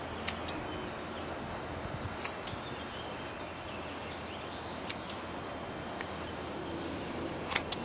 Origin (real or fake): real